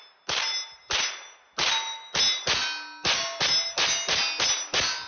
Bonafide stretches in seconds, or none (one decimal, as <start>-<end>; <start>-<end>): 0.0-5.1